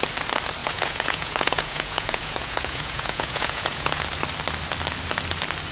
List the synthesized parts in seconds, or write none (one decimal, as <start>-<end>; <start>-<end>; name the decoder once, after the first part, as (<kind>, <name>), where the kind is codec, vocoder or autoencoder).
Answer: 0.6-4.0 (vocoder, Vocos)